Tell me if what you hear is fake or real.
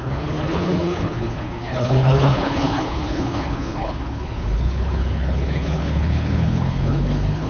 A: fake